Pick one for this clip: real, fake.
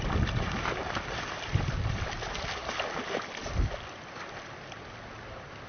real